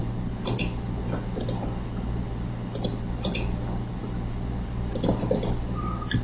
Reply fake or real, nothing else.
real